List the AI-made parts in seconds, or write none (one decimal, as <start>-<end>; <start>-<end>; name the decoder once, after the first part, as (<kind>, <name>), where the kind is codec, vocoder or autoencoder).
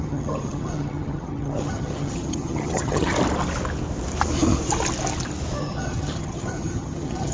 0.0-3.1 (vocoder, HiFi-GAN); 5.6-7.3